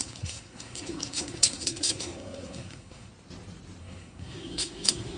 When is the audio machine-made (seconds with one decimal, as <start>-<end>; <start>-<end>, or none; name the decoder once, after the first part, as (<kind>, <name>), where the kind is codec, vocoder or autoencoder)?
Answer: 0.0-3.1 (codec, SNAC); 3.8-5.2